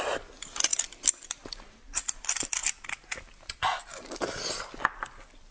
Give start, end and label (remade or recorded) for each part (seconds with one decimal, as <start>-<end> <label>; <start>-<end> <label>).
0.0-5.5 recorded